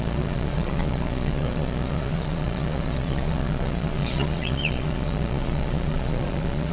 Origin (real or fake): fake